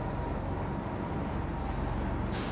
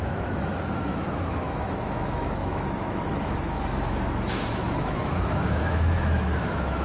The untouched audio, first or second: first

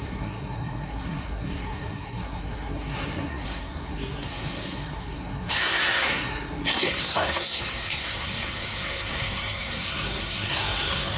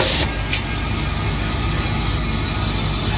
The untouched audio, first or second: second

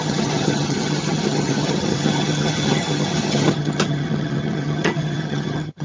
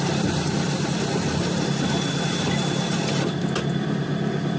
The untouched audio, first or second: second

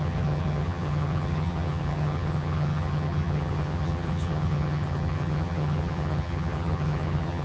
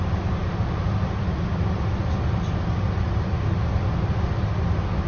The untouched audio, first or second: second